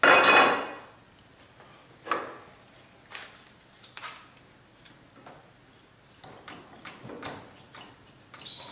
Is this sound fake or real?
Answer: real